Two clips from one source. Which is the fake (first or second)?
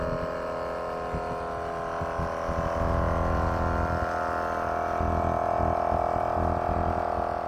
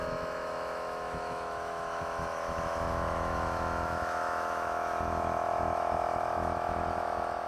second